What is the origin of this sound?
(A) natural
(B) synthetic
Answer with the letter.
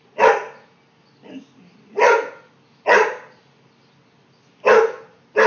A